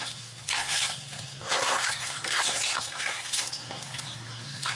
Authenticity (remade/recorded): remade